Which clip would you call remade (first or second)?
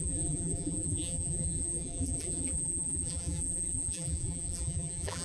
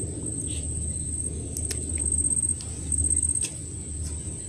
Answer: first